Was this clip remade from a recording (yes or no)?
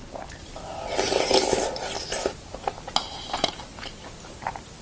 no